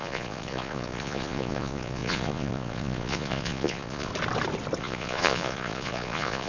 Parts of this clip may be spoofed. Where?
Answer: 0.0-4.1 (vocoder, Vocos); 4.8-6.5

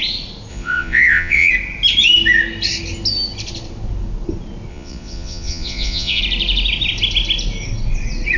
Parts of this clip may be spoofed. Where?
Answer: 0.5-1.5 (vocoder, Vocos); 4.7-6.2

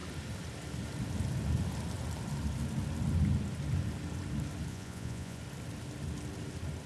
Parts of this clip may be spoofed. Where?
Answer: 4.7-5.4 (vocoder, Vocos)

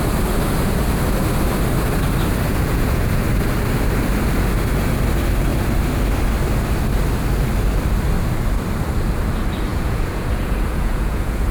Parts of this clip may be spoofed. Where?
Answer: 2.5-3.2 (vocoder, Vocos); 9.7-11.5

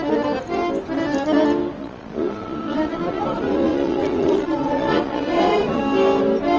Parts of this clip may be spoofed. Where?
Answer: 1.8-5.8 (vocoder, Vocos)

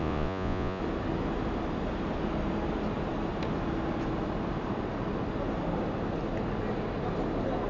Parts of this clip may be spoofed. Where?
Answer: 0.0-0.8 (vocoder, Vocos)